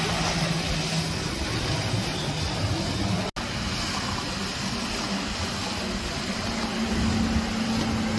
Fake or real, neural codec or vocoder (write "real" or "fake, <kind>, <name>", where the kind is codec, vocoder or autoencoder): real